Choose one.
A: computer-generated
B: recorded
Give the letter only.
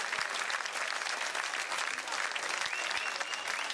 B